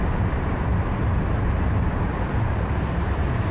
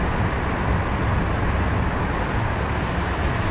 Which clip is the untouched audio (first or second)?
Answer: second